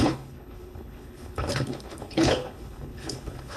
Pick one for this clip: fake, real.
fake